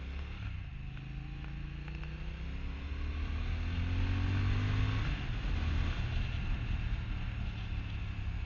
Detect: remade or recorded recorded